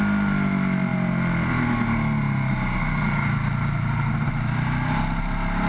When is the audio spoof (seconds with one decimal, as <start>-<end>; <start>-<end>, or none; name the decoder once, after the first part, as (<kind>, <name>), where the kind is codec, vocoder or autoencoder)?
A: none